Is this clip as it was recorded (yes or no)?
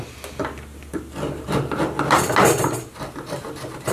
yes